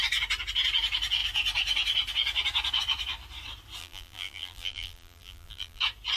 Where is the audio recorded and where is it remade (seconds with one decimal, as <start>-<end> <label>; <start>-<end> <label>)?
0.0-3.8 recorded; 3.8-5.8 remade; 5.8-6.2 recorded